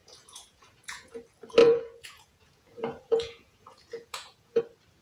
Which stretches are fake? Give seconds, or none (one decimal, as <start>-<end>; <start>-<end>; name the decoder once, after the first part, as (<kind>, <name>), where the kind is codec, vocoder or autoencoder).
0.0-1.2 (vocoder, Vocos); 1.6-4.6